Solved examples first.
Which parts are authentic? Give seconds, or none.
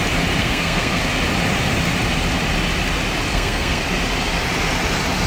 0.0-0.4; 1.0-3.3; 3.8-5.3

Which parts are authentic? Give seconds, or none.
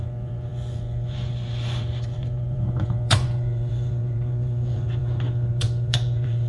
5.0-5.5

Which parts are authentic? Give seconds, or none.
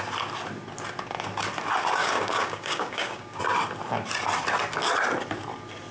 0.0-2.0; 3.4-5.9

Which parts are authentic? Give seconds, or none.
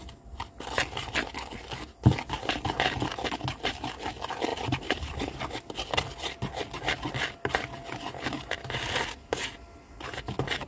0.0-10.7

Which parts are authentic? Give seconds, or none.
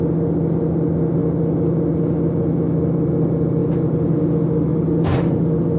0.0-3.6; 4.2-4.7; 5.2-5.8